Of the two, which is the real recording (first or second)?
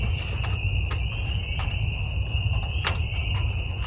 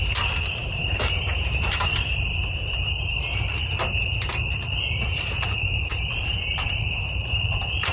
first